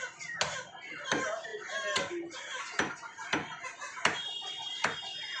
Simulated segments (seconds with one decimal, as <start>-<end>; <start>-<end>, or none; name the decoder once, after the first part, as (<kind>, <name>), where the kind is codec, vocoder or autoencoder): none